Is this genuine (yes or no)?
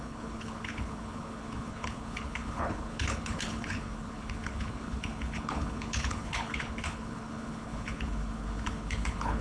no